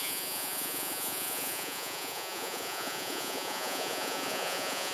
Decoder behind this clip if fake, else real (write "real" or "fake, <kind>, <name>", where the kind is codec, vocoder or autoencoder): fake, vocoder, Vocos